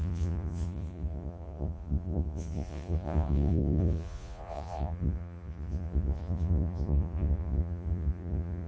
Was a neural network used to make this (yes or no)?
yes